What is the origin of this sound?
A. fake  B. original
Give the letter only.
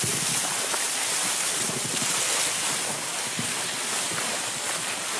B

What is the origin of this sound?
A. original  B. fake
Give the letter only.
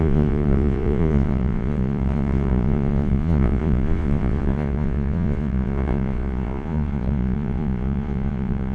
B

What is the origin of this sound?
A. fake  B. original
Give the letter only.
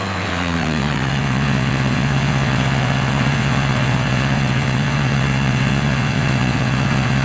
A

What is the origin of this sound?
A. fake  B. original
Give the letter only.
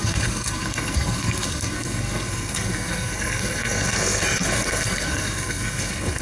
A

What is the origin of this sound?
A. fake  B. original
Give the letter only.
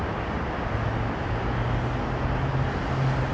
B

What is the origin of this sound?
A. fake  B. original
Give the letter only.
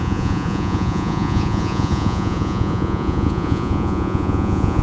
A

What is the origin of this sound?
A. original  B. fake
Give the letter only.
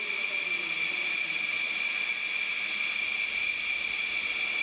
A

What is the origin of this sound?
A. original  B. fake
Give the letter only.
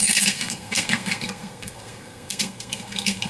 B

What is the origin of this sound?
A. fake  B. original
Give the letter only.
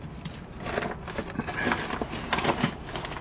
B